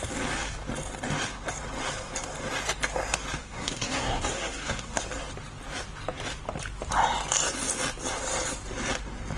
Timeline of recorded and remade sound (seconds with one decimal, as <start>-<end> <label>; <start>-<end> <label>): 0.0-3.4 recorded; 3.4-5.0 remade; 5.0-9.4 recorded